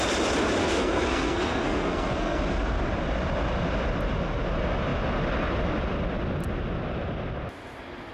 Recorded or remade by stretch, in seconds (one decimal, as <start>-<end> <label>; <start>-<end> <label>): 0.0-0.6 recorded; 0.6-2.4 remade; 2.4-8.1 recorded